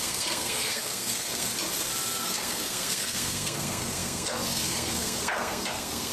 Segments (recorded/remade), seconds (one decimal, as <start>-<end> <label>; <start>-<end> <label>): 0.0-1.5 remade; 1.5-2.2 recorded; 2.2-6.1 remade